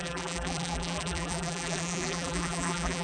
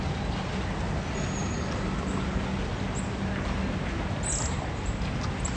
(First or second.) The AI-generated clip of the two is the first